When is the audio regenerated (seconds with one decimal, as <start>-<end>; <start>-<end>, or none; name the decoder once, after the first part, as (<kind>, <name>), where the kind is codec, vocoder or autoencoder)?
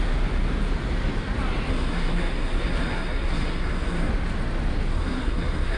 1.7-4.1 (codec, SNAC); 4.9-5.8